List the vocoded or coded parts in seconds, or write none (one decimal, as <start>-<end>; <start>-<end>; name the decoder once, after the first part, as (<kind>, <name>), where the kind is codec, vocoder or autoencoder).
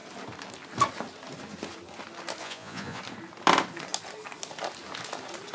2.4-3.0 (vocoder, Vocos)